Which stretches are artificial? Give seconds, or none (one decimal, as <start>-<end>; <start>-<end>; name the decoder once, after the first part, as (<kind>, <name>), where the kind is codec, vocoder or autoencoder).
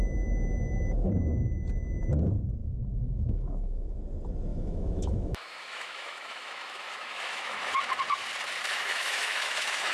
2.6-4.0 (autoencoder, DAC-VAE); 4.5-7.7; 8.7-9.9